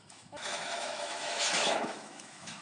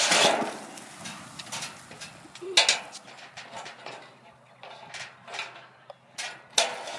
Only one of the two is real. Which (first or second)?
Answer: second